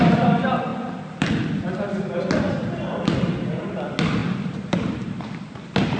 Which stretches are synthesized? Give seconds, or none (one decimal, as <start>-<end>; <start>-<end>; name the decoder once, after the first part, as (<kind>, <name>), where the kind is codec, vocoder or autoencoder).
4.2-5.5 (vocoder, BigVGAN v2)